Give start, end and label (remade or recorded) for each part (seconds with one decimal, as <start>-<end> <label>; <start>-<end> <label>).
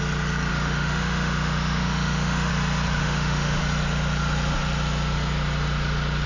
0.0-0.5 recorded; 0.5-2.5 remade; 2.5-3.0 recorded; 3.0-3.6 remade; 3.6-6.3 recorded